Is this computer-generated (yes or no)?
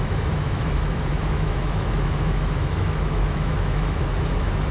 yes